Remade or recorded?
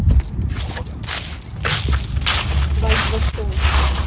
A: recorded